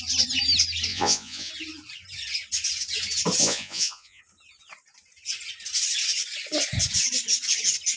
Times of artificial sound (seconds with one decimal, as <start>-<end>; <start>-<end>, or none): 0.9-1.5; 3.4-4.2